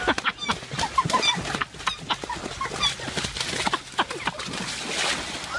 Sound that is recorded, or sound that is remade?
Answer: recorded